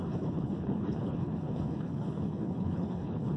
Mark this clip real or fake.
fake